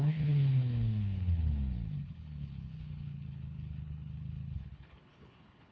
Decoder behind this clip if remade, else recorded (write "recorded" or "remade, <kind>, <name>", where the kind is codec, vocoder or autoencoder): remade, codec, HILCodec